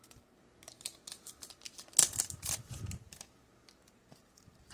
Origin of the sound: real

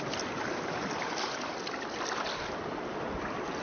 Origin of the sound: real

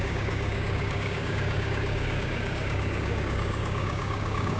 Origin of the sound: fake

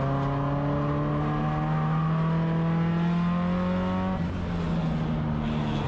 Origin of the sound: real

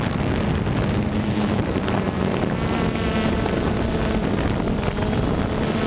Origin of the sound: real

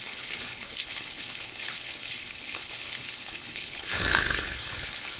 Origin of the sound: fake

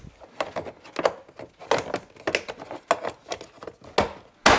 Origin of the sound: real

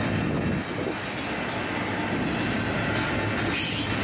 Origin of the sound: real